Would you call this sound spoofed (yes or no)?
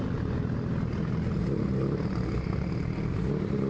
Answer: no